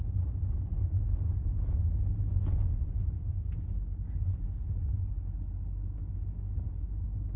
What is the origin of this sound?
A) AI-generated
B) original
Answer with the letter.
B